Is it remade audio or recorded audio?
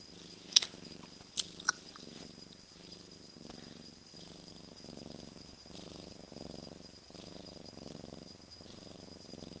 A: recorded